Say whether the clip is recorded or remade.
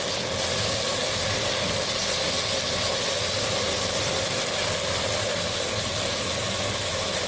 recorded